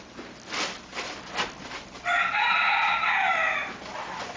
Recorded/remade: recorded